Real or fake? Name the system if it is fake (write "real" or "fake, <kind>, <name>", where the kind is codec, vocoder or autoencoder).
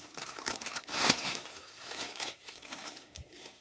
fake, codec, SNAC